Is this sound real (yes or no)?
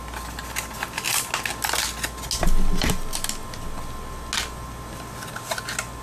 yes